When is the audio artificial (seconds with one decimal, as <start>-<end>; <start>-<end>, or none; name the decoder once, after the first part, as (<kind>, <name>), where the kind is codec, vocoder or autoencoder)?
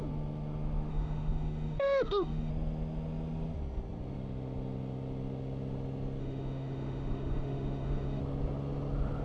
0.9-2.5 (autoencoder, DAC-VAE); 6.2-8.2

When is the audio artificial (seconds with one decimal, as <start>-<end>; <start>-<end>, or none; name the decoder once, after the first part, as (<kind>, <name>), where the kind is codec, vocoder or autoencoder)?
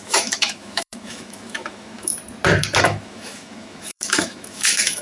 0.0-2.1 (autoencoder, DAC-VAE); 2.8-5.0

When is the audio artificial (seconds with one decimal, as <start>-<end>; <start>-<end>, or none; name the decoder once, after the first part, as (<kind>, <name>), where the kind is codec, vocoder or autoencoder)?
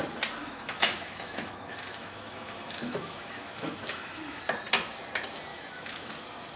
0.4-4.4 (autoencoder, DAC-VAE); 5.5-6.1